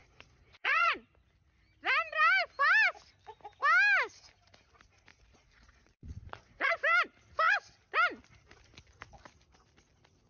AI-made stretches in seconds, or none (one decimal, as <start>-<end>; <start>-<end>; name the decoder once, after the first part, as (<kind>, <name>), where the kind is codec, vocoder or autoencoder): 0.0-0.9 (vocoder, Vocos); 5.1-6.7